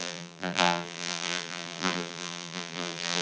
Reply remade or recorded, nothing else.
remade